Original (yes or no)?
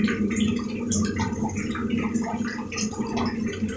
yes